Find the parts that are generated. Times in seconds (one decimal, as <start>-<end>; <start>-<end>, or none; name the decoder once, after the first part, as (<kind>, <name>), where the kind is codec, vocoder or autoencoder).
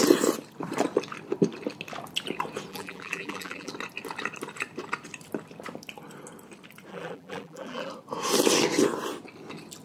2.7-3.7 (vocoder, BigVGAN v2); 6.9-7.9